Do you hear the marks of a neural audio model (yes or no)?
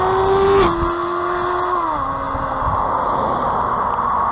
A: no